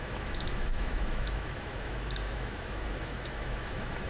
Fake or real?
fake